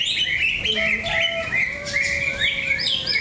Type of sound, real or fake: real